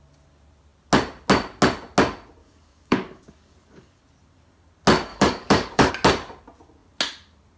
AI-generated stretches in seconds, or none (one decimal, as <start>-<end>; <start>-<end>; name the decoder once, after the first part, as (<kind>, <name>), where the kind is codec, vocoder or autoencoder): 2.4-4.0 (codec, DAC); 5.1-5.9

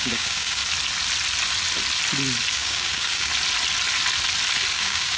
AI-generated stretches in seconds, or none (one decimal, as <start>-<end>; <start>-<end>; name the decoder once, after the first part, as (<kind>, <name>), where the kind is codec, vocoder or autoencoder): 0.0-0.6 (codec, DAC); 2.5-3.3; 4.7-5.2

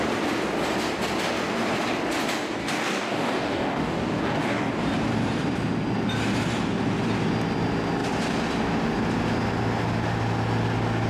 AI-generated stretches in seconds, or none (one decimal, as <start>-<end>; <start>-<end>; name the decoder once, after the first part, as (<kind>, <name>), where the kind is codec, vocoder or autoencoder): 2.6-4.7 (codec, DAC)

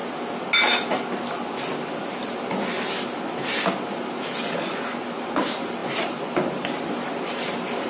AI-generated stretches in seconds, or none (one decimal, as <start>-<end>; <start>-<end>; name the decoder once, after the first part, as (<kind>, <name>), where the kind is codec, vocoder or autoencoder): none